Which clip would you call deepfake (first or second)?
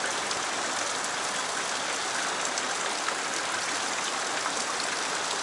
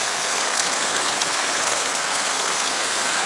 second